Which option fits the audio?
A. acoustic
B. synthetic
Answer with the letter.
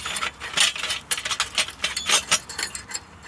A